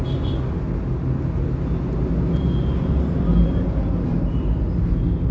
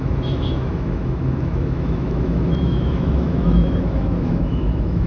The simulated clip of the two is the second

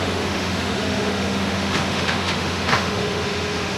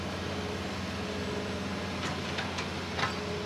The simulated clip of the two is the first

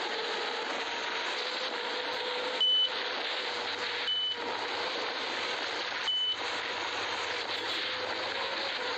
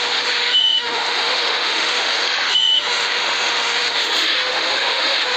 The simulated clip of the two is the second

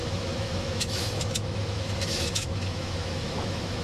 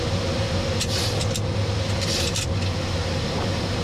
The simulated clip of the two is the first